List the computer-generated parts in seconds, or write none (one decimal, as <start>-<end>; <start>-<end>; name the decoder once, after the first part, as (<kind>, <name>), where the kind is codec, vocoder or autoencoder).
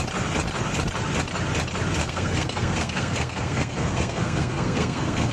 2.0-5.3 (codec, SNAC)